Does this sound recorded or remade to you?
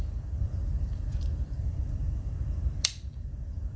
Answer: remade